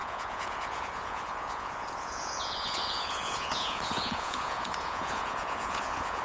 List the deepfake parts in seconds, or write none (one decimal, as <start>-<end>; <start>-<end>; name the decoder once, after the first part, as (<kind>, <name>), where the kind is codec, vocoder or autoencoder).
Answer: 0.0-6.2 (vocoder, Vocos)